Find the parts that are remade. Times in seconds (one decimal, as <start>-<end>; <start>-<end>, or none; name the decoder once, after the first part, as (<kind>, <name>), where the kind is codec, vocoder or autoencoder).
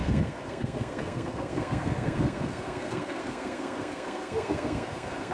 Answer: 0.0-5.3 (codec, SNAC)